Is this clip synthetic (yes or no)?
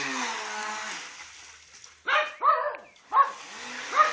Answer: no